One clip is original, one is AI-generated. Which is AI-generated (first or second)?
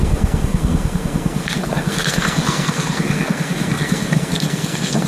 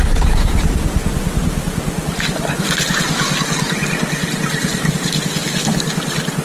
first